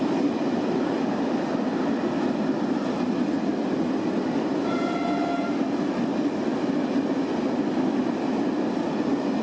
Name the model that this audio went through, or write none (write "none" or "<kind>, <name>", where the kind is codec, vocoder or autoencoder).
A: none